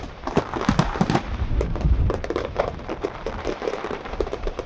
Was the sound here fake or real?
fake